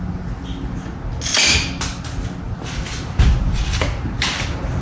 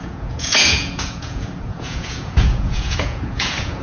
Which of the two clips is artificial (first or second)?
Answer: second